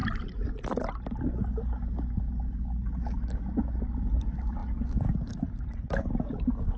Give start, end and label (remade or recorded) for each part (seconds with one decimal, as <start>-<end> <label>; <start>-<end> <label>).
0.0-6.8 recorded